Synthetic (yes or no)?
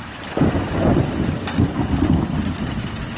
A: no